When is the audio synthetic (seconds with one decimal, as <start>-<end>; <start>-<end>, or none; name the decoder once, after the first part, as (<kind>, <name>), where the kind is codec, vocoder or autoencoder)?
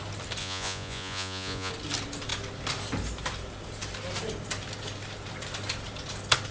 0.4-1.7 (vocoder, Vocos)